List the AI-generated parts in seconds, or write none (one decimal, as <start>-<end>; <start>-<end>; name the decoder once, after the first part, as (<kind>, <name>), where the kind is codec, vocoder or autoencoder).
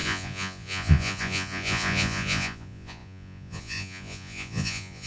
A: 0.0-5.1 (vocoder, Vocos)